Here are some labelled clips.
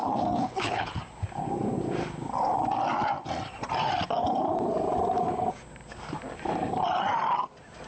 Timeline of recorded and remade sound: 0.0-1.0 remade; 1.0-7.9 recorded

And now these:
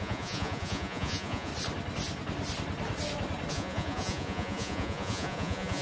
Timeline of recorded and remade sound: 0.0-1.5 remade; 1.5-3.5 recorded; 3.5-5.8 remade